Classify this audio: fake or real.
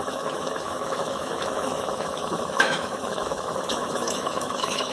fake